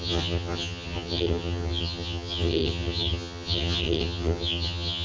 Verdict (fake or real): fake